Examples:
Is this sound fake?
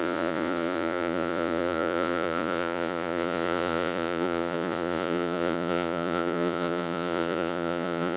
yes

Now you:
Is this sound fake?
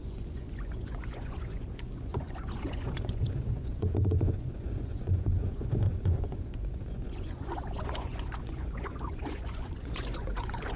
yes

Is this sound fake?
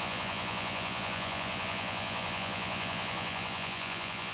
yes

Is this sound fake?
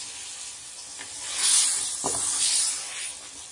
no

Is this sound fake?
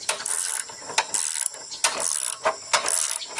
no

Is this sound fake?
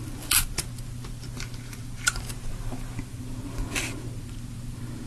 no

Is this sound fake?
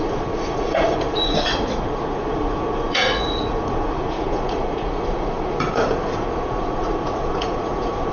yes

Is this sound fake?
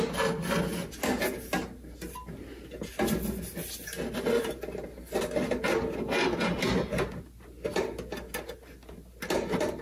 no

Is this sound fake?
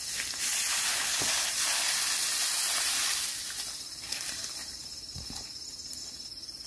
no